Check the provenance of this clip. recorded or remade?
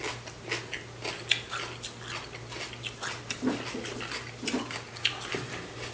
recorded